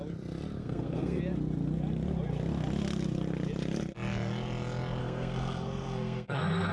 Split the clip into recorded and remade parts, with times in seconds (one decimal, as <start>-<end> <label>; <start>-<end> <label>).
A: 0.0-0.6 recorded; 0.6-1.2 remade; 1.2-5.0 recorded; 5.0-6.7 remade

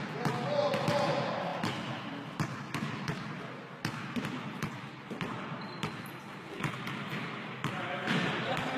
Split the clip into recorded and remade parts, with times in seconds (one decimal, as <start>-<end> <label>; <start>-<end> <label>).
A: 0.0-8.8 recorded

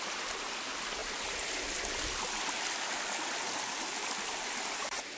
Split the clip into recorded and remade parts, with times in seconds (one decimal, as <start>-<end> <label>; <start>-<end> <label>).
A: 0.0-5.2 recorded

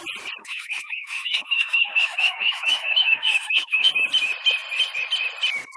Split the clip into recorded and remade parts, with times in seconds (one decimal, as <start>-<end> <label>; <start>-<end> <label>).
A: 0.0-0.4 recorded; 0.4-3.9 remade; 3.9-5.8 recorded